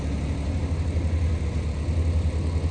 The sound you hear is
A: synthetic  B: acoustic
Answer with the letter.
B